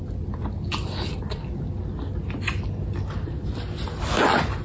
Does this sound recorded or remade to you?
recorded